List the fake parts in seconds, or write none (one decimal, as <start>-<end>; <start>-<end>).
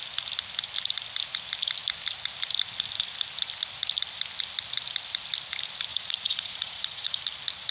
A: 5.9-7.2